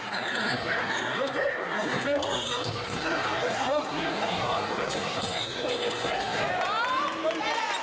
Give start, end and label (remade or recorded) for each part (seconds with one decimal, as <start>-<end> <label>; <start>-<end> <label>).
0.0-6.4 remade; 6.4-7.8 recorded